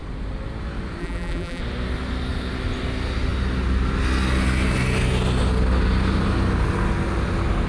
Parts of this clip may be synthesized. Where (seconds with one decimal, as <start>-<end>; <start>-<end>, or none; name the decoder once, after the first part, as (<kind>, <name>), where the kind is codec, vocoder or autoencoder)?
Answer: 1.0-1.6 (vocoder, BigVGAN v2)